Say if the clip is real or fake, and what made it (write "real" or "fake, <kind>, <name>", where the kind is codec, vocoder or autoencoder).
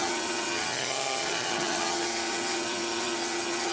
fake, vocoder, HiFi-GAN